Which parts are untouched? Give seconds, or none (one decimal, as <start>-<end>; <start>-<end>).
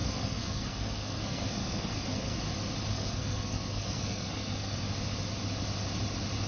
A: 2.4-2.9; 4.9-6.5